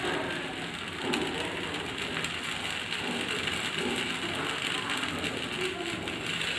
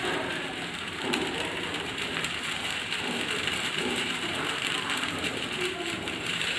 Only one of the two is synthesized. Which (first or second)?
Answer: second